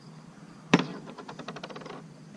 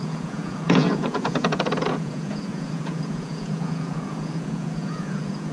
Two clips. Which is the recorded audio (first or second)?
first